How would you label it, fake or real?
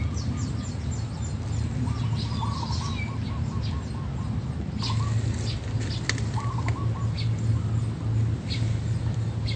real